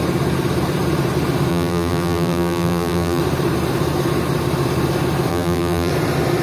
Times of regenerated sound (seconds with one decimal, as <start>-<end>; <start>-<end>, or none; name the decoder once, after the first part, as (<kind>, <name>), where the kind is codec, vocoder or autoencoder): 1.5-3.2 (vocoder, BigVGAN v2); 5.3-5.9